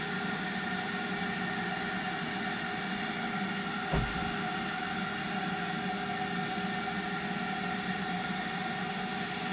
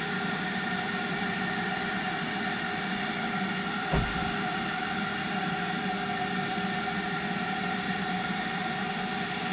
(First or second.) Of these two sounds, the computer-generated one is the second